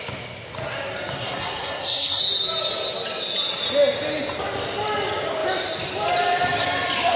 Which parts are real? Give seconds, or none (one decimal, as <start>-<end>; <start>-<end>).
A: 0.0-1.2; 2.2-7.2